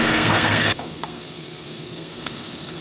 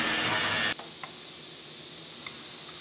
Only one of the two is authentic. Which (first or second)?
second